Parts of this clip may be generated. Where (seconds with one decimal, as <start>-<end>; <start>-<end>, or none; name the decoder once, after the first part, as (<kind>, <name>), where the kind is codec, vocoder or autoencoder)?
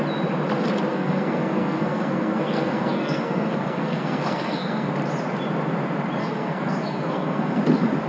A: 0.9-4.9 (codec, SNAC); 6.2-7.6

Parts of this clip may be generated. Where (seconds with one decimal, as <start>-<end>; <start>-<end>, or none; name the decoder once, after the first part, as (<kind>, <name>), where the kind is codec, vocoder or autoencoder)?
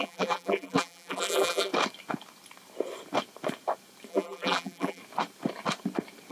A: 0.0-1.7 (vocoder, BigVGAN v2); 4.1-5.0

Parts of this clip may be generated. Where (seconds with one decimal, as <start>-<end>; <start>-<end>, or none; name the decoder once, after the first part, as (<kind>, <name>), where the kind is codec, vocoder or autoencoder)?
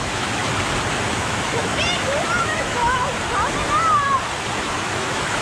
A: 0.0-0.4 (autoencoder, DAC-VAE); 1.1-1.7; 2.4-2.8; 4.6-5.4